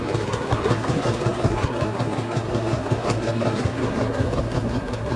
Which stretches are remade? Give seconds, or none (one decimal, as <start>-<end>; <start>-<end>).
0.0-5.2